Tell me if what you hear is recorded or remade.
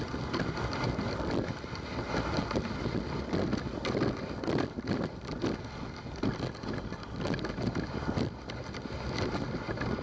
recorded